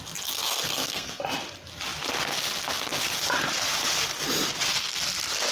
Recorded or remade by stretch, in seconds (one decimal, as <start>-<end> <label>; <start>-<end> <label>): 0.0-0.6 recorded; 0.6-1.2 remade; 1.2-5.5 recorded